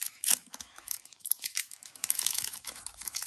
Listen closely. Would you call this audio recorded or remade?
remade